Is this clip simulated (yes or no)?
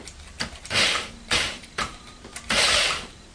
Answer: yes